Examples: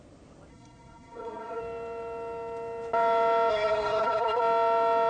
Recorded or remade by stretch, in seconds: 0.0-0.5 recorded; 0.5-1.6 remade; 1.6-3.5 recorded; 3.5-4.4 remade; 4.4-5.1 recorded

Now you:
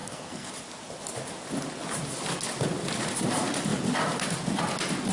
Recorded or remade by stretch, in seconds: 0.0-0.5 remade; 0.5-5.1 recorded